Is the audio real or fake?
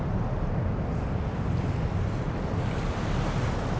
real